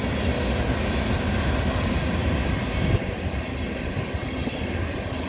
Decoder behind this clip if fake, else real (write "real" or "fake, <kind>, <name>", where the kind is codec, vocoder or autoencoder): real